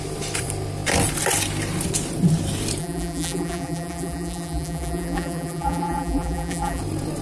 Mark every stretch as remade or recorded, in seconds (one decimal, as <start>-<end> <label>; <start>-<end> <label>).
0.0-2.8 recorded; 2.8-6.8 remade; 6.8-7.2 recorded